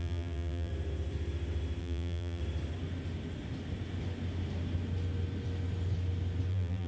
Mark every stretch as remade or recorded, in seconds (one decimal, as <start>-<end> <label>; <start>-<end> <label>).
0.0-0.7 remade; 0.7-1.8 recorded; 1.8-2.4 remade; 2.4-6.5 recorded; 6.5-6.9 remade